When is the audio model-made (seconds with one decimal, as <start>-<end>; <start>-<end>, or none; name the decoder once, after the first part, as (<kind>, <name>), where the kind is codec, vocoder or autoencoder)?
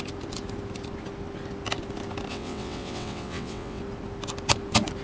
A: 2.3-3.8 (vocoder, WaveNeXt)